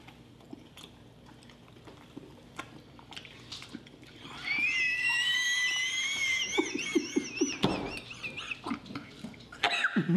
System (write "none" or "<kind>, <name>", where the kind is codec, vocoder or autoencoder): none